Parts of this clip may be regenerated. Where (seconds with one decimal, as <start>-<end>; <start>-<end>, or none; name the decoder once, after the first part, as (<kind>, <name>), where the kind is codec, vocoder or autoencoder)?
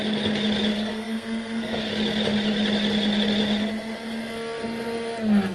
0.7-1.9 (codec, SNAC)